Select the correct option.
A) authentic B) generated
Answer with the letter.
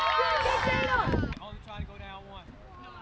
A